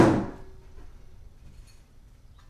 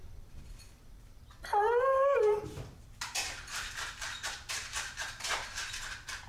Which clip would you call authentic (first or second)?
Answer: first